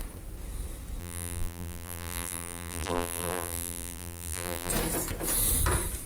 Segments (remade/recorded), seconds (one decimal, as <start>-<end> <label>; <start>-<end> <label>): 0.0-1.0 recorded; 1.0-4.7 remade; 4.7-6.1 recorded